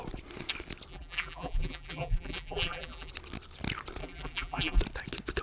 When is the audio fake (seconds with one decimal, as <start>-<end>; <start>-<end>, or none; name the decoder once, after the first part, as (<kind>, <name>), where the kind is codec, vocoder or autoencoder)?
0.9-3.1 (vocoder, BigVGAN v2); 4.0-4.8